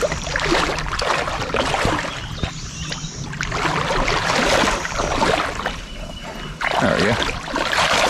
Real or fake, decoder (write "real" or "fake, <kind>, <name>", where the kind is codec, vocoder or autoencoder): real